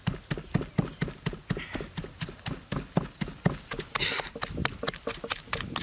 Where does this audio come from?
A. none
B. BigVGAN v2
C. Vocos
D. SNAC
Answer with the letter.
A